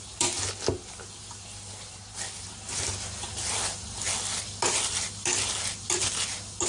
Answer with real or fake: real